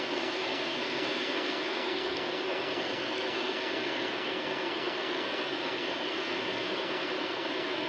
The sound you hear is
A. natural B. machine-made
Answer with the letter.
B